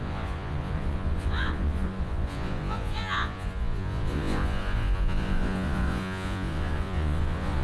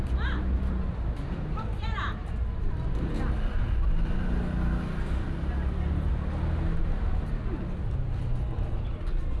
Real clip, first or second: second